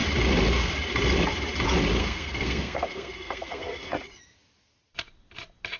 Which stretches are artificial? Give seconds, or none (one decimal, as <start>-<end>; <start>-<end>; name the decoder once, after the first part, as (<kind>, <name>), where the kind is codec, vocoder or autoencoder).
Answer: 2.0-3.9 (codec, SNAC)